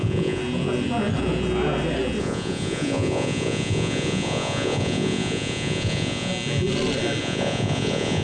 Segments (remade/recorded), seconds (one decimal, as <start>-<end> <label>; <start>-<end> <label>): 0.0-0.4 remade; 0.4-2.2 recorded; 2.2-6.3 remade; 6.3-7.2 recorded; 7.2-8.2 remade